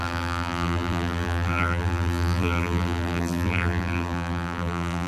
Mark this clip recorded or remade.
remade